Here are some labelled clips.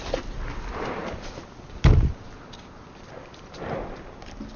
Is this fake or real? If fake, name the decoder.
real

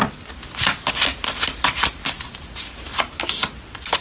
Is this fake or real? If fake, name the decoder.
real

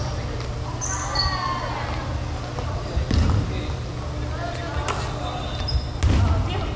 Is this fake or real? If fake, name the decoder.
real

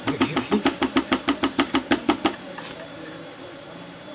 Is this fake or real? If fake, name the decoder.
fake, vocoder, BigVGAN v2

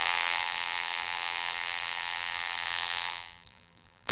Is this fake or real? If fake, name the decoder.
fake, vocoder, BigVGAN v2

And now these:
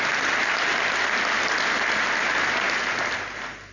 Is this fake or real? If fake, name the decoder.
real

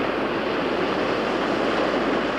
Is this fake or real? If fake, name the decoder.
real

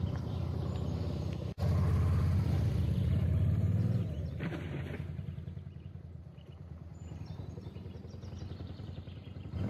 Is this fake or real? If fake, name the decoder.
fake, vocoder, BigVGAN v2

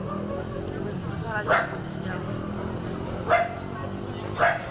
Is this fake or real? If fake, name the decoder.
real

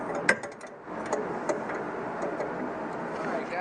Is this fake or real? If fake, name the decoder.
real